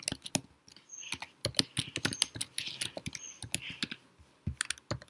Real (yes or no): yes